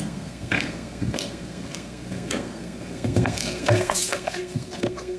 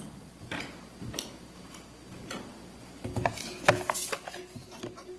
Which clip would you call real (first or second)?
second